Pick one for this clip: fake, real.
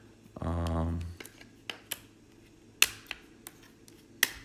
real